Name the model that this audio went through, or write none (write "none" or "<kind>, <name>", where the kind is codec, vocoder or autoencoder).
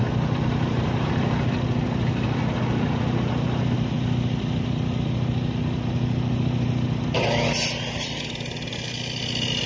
none